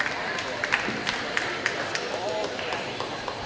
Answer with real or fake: real